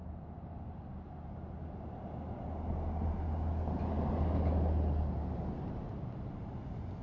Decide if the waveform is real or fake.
real